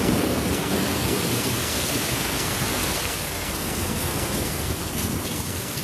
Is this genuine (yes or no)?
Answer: no